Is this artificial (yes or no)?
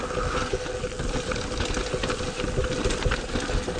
no